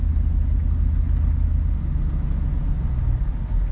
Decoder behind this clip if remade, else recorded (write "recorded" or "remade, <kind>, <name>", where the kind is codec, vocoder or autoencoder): recorded